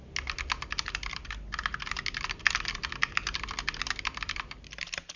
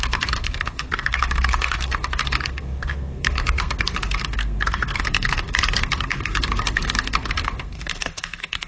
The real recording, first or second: first